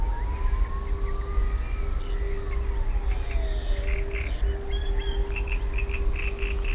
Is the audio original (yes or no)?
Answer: yes